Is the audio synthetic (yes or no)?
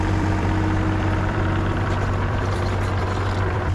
yes